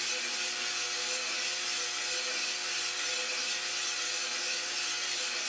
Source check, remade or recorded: recorded